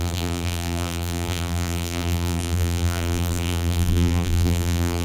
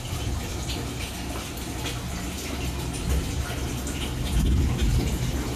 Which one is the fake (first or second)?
first